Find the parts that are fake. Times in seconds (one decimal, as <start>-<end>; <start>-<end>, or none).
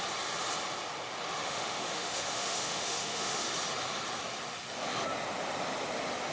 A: 1.4-3.5